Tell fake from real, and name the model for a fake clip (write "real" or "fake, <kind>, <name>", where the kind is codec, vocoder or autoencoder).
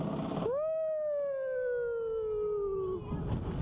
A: real